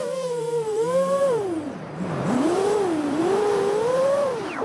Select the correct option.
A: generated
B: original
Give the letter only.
A